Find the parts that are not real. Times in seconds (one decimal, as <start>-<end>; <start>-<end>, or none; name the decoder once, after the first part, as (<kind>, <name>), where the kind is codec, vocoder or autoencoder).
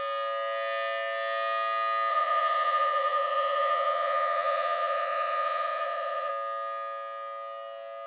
2.1-6.3 (vocoder, Vocos)